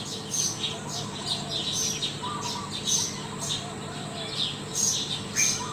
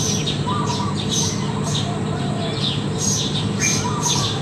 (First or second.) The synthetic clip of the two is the second